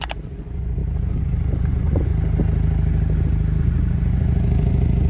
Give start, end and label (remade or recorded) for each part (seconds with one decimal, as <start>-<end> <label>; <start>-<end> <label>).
0.0-2.1 remade; 2.1-3.6 recorded; 3.6-5.1 remade